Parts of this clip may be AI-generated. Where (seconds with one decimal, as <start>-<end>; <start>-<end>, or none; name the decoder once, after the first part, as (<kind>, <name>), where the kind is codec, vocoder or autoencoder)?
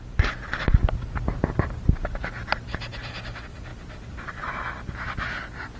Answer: 3.7-4.5 (vocoder, BigVGAN v2)